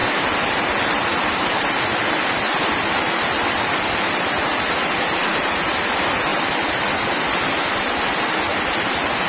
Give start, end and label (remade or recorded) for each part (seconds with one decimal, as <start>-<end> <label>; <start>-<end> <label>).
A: 0.0-9.3 recorded